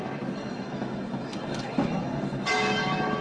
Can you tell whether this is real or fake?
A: fake